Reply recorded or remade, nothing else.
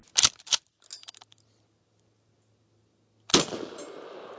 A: recorded